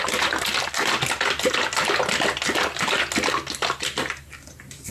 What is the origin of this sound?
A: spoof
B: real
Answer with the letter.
B